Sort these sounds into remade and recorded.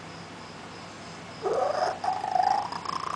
recorded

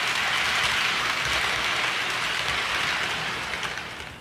recorded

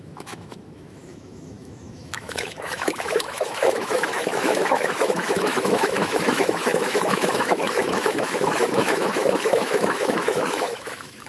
remade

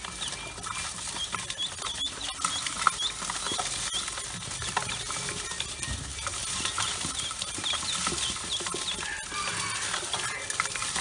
recorded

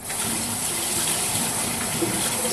recorded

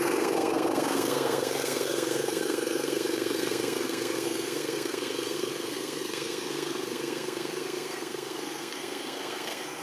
remade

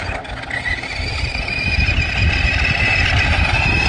recorded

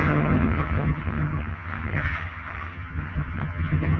remade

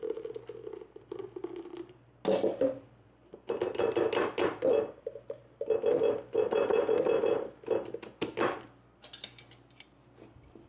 recorded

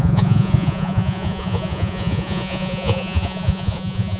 remade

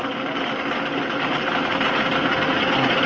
recorded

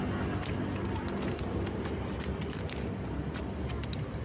recorded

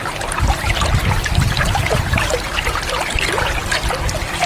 recorded